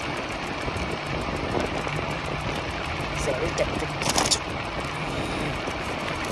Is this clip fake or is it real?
fake